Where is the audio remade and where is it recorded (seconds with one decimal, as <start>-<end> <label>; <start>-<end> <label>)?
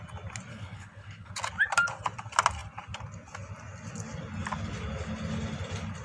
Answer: 0.0-0.5 recorded; 0.5-1.3 remade; 1.3-6.0 recorded